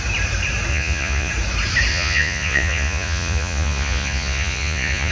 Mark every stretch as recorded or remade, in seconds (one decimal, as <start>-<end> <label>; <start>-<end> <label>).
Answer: 0.0-0.7 recorded; 0.7-1.3 remade; 1.3-1.9 recorded; 1.9-5.1 remade